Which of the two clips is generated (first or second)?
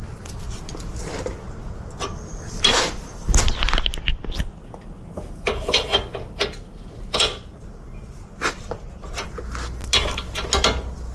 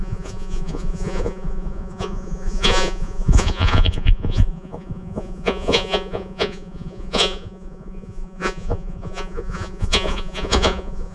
second